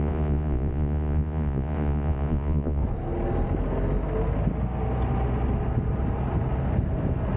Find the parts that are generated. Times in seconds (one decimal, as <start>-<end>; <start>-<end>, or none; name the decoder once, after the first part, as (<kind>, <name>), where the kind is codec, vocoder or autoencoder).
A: 0.0-2.8 (vocoder, Vocos)